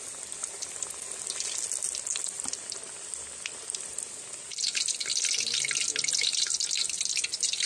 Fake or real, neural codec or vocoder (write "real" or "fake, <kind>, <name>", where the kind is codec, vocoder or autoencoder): real